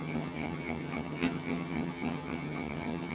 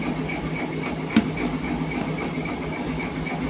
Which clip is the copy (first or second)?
first